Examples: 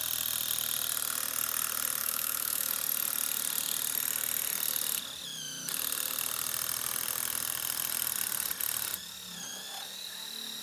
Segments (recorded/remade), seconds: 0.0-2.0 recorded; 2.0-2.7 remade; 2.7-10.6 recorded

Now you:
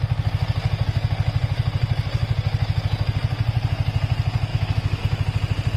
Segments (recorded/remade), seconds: 0.0-4.5 recorded; 4.5-5.0 remade; 5.0-5.8 recorded